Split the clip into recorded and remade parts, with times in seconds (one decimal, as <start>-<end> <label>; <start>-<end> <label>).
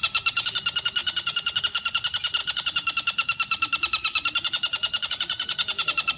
0.0-2.4 recorded; 2.4-6.2 remade